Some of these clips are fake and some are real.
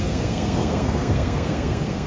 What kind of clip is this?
fake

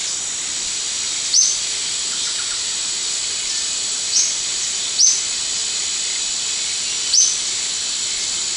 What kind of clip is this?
real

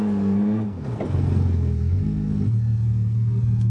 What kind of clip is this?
fake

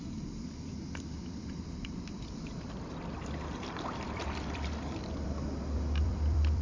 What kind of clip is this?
fake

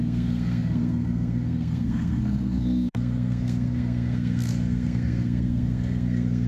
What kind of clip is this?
fake